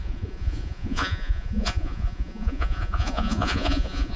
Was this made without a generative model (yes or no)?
no